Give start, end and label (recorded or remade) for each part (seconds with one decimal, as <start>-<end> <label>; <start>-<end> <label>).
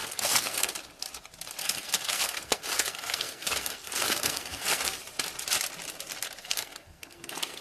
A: 0.0-0.7 remade; 0.7-1.6 recorded; 1.6-5.0 remade; 5.0-6.4 recorded; 6.4-7.6 remade